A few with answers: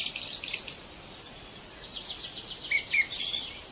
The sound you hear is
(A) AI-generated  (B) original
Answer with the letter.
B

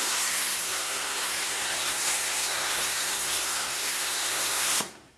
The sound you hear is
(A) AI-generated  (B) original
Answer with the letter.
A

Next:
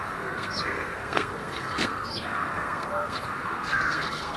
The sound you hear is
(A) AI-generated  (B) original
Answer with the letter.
A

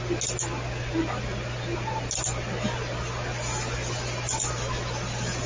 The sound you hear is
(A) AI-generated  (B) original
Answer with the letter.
B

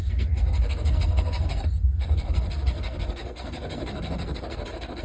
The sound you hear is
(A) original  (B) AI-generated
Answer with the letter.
B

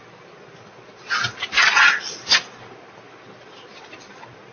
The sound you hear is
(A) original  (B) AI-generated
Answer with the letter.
A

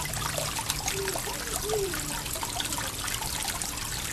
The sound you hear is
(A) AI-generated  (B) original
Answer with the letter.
B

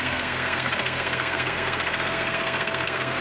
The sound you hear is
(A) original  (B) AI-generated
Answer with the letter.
B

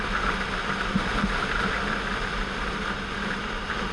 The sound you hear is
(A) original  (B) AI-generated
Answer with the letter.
A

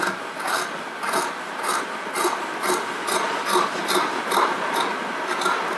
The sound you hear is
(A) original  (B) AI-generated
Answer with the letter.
A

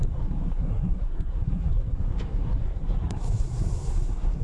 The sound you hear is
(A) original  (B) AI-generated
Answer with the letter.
B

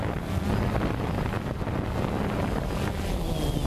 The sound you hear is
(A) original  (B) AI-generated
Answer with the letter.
A